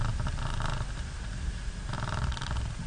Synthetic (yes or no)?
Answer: no